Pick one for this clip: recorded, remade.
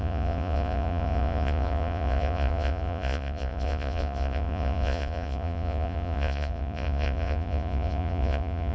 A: remade